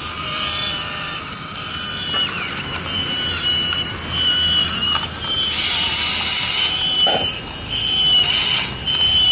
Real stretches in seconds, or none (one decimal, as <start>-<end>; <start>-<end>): 0.0-9.3